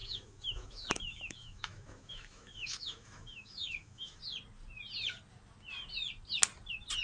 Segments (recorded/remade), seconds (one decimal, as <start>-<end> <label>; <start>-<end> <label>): 0.0-4.2 remade; 4.2-7.0 recorded